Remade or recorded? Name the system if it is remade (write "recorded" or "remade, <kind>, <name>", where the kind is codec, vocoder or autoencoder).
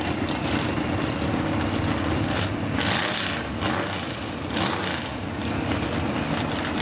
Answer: recorded